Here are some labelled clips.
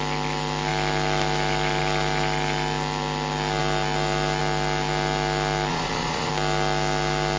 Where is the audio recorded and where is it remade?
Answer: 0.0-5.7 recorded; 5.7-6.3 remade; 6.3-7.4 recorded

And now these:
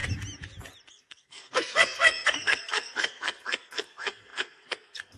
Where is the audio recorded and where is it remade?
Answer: 0.0-0.9 recorded; 0.9-5.2 remade

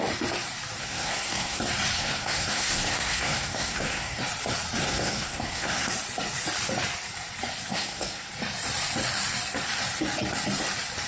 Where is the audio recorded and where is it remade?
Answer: 0.0-0.8 recorded; 0.8-1.6 remade; 1.6-2.0 recorded; 2.0-4.2 remade; 4.2-4.8 recorded; 4.8-5.9 remade; 5.9-7.7 recorded; 7.7-8.3 remade; 8.3-11.1 recorded

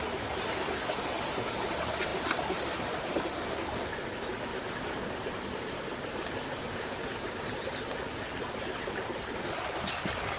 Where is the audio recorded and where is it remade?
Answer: 0.0-2.1 recorded; 2.1-3.2 remade; 3.2-4.5 recorded; 4.5-7.3 remade; 7.3-10.4 recorded

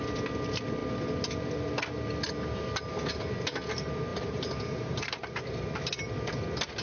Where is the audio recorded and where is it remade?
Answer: 0.0-4.1 recorded; 4.1-5.6 remade; 5.6-6.8 recorded